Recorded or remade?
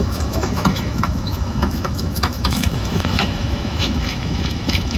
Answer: remade